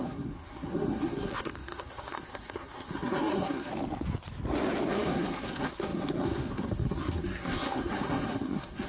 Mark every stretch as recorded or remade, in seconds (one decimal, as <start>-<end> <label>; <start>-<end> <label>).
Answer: 0.0-3.7 remade; 3.7-4.9 recorded; 4.9-8.9 remade